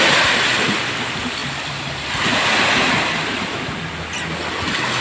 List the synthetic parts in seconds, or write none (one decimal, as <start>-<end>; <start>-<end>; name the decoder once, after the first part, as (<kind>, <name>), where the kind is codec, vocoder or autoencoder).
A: none